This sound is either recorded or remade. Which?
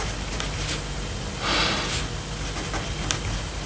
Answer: recorded